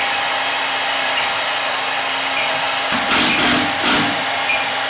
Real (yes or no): no